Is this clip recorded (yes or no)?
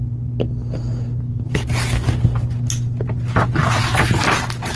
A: yes